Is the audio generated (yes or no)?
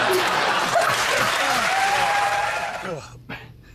yes